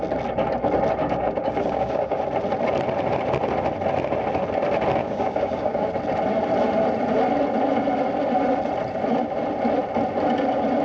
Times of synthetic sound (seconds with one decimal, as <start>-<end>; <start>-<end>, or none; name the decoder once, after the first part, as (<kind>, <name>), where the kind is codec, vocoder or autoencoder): 1.0-2.2 (codec, DAC); 5.0-5.9